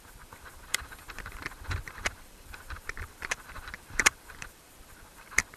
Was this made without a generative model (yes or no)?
no